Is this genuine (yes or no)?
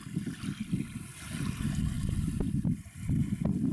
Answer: yes